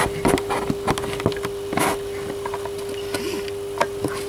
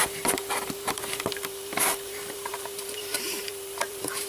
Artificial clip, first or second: second